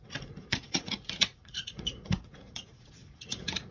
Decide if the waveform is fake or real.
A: fake